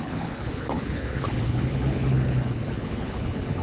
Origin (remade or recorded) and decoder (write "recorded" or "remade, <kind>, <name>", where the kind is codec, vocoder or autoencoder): remade, codec, HILCodec